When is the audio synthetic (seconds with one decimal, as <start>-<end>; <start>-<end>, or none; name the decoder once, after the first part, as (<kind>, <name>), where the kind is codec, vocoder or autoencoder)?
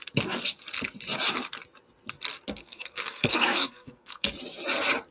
2.6-4.3 (codec, SNAC)